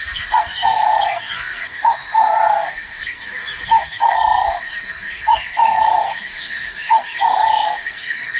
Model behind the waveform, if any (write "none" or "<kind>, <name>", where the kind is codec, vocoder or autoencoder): codec, SNAC